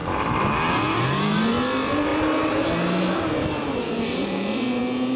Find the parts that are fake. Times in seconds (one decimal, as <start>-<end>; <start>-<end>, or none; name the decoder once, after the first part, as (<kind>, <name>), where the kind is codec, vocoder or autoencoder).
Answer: none